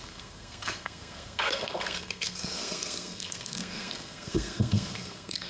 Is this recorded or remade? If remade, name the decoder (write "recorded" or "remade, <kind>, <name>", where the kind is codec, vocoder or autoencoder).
remade, codec, SNAC